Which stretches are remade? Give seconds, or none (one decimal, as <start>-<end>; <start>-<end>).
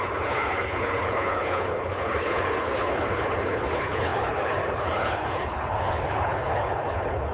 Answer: 0.0-7.3